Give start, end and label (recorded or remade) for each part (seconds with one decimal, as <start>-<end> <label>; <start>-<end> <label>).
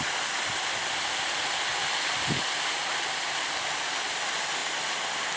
0.0-5.4 recorded